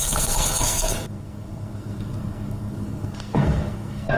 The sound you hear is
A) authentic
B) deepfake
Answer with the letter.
B